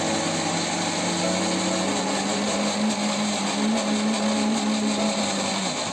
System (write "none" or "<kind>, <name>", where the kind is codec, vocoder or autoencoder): none